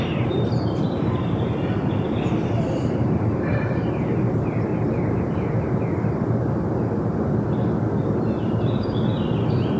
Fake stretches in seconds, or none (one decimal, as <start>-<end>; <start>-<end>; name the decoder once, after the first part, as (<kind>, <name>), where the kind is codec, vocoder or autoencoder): 0.0-4.7 (vocoder, BigVGAN v2); 7.9-9.8